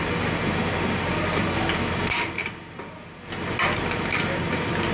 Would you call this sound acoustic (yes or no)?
yes